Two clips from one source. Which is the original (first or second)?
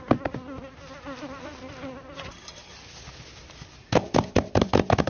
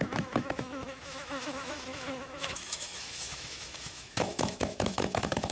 first